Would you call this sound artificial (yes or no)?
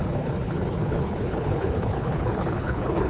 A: yes